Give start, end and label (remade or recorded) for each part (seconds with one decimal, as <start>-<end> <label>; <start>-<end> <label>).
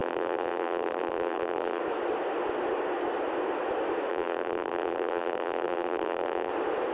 0.0-1.8 remade; 1.8-4.1 recorded; 4.1-6.5 remade; 6.5-6.9 recorded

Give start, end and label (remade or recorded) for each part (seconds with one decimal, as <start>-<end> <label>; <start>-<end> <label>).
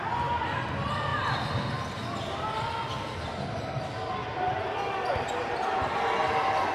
0.0-6.7 recorded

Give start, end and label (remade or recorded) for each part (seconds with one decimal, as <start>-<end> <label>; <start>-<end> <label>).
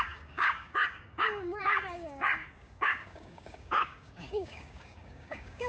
0.0-5.7 remade